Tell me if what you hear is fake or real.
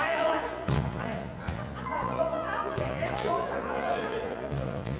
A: fake